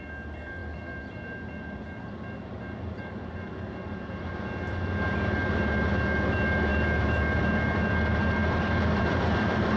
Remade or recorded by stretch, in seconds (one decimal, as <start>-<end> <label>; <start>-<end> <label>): 0.0-0.6 recorded; 0.6-4.3 remade; 4.3-6.7 recorded; 6.7-7.4 remade; 7.4-8.4 recorded; 8.4-9.8 remade